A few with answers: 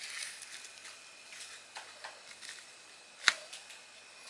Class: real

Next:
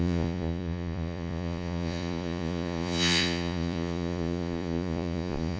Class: fake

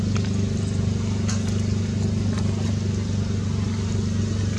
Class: real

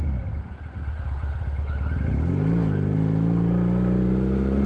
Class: real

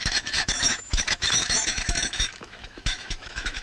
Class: fake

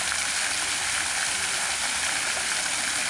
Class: real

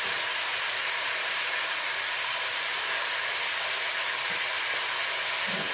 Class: real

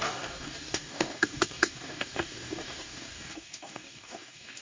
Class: fake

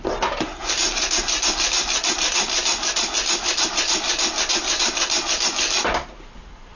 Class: real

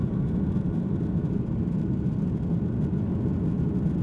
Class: real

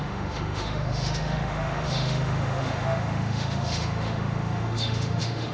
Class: fake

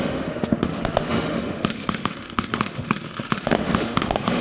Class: fake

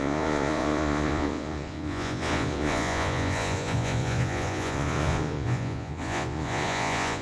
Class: fake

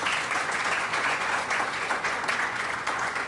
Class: fake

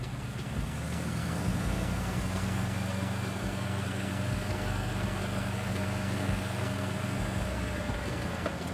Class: fake